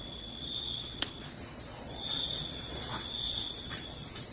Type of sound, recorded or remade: remade